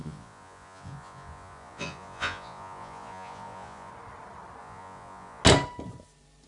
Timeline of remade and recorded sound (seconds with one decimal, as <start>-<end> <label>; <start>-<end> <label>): 0.0-3.9 remade; 3.9-4.6 recorded; 4.6-5.4 remade; 5.4-6.5 recorded